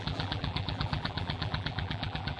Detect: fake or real fake